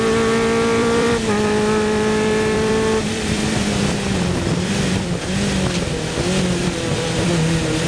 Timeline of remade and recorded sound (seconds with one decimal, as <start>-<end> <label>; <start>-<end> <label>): 0.0-0.8 recorded; 0.8-2.7 remade; 2.7-3.1 recorded; 3.1-5.1 remade; 5.1-6.6 recorded; 6.6-7.3 remade; 7.3-7.9 recorded